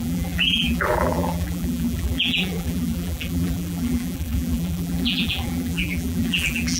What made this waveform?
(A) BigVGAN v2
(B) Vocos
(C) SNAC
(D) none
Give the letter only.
A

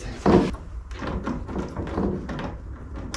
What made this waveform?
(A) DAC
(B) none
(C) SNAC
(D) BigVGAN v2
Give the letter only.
B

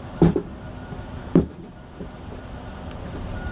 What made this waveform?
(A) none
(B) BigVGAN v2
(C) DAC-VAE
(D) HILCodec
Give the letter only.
A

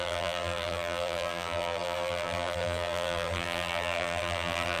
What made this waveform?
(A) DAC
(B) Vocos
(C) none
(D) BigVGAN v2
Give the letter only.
D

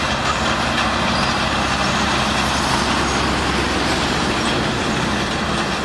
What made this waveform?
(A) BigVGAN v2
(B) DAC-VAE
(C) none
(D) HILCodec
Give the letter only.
C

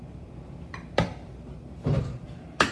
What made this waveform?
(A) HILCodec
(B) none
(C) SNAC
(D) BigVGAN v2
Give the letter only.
D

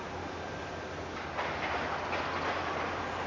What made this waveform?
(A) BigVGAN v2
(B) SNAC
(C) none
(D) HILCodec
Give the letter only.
C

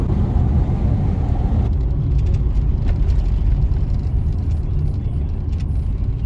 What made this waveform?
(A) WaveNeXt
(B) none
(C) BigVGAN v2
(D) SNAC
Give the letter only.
B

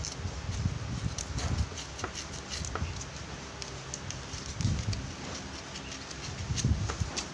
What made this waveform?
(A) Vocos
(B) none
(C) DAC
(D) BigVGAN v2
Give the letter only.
B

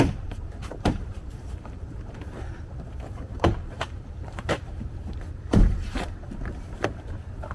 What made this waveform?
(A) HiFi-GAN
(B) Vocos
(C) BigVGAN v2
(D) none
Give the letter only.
C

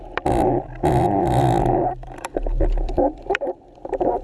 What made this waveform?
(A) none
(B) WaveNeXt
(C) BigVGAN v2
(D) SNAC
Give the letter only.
C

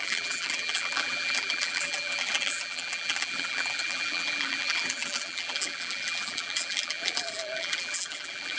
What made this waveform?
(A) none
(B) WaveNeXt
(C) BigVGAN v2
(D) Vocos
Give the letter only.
C